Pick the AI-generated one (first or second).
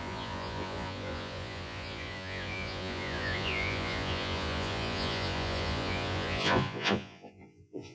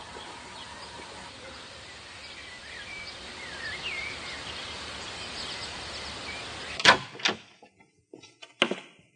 first